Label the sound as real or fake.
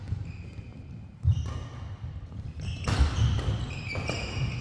real